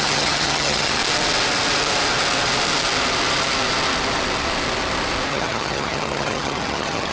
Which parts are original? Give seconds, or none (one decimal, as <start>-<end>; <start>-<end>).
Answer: 1.0-5.3